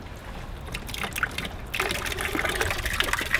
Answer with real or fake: real